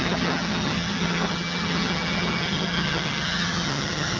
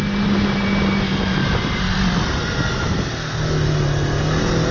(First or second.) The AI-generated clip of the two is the first